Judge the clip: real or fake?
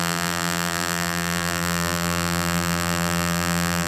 fake